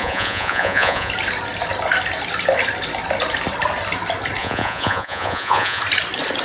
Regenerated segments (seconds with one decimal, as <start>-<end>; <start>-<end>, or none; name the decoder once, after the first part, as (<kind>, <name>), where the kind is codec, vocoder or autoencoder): 0.0-1.1 (vocoder, Vocos); 4.4-5.8

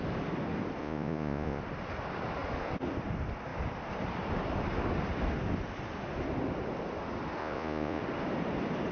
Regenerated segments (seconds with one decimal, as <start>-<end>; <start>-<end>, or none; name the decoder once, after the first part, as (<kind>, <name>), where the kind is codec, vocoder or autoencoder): 0.8-1.6 (vocoder, Vocos); 7.4-8.0